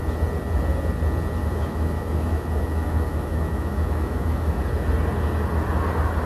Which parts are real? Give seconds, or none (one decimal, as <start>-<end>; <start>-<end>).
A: 0.0-1.4; 4.6-6.3